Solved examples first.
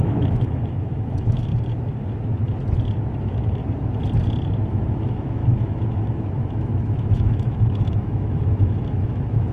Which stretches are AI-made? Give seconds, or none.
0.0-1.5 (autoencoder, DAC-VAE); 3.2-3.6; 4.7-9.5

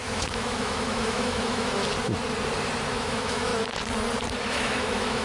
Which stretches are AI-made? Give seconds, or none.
0.0-1.8 (autoencoder, DAC-VAE); 3.0-3.5; 4.5-5.2

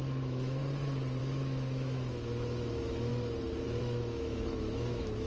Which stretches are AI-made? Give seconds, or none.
0.0-0.6 (autoencoder, DAC-VAE); 1.2-3.1; 3.8-5.3

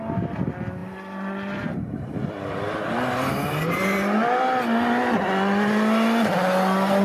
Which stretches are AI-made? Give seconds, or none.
none

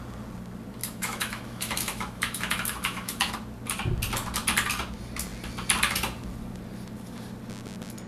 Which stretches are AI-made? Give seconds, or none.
0.8-3.3 (autoencoder, DAC-VAE)